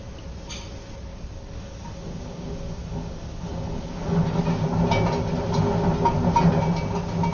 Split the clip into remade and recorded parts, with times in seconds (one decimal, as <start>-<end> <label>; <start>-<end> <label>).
0.0-1.1 recorded; 1.1-4.4 remade; 4.4-7.3 recorded